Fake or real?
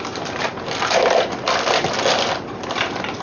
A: real